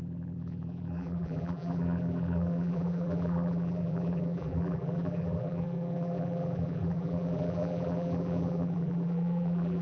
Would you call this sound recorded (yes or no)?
no